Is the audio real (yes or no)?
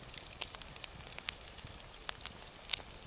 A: yes